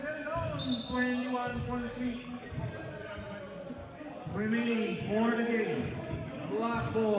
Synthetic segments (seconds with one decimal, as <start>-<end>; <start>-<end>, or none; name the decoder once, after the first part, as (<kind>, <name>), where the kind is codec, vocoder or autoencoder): 1.5-2.7 (codec, DAC); 3.8-7.2